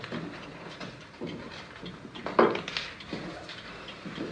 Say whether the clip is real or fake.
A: real